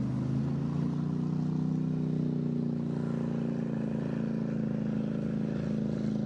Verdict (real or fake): real